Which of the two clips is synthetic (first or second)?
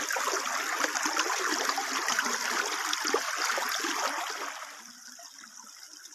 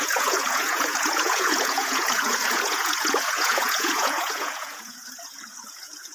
second